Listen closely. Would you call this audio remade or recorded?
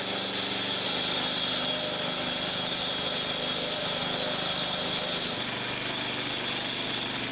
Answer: recorded